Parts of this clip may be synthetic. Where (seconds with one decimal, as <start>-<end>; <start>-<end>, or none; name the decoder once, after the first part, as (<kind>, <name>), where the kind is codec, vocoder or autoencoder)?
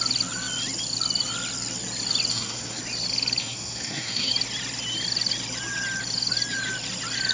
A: 2.3-2.8 (codec, SNAC); 3.4-4.3